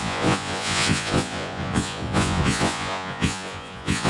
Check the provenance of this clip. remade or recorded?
remade